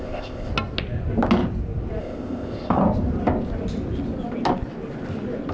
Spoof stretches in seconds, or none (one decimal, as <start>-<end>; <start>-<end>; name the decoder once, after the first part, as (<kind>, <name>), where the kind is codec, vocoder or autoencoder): 0.0-0.5 (codec, ZipCodec); 2.0-2.8